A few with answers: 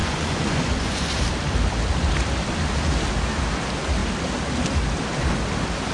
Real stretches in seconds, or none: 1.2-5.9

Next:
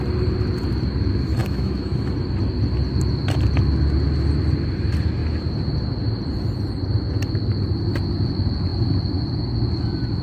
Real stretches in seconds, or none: 0.0-1.4; 2.1-10.2

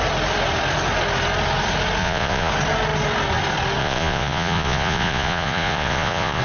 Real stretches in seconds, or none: 0.0-2.0; 2.5-3.8

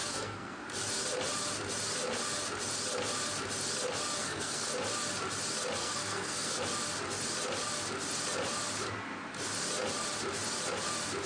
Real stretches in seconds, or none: 0.6-4.2; 4.7-5.8; 6.6-11.3